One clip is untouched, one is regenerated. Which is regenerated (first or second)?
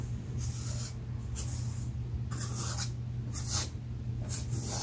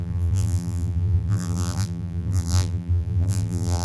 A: second